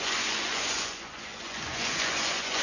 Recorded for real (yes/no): no